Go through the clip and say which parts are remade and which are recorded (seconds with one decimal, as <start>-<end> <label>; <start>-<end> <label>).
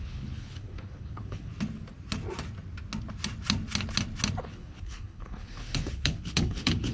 0.0-1.5 remade; 1.5-4.4 recorded; 4.4-6.9 remade